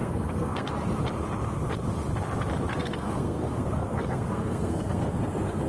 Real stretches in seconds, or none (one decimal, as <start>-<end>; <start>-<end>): 0.7-2.7